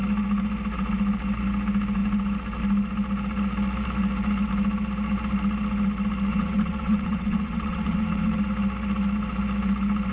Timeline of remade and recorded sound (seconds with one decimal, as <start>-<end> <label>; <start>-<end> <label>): 0.0-6.3 recorded; 6.3-8.4 remade; 8.4-10.1 recorded